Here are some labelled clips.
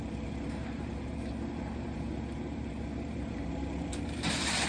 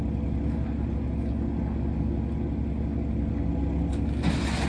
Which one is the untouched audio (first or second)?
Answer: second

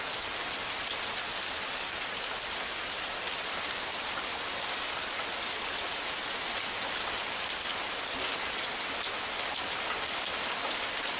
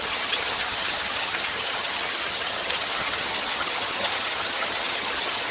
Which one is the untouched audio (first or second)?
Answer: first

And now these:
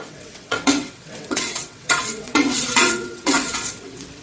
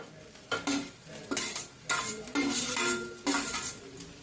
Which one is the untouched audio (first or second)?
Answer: second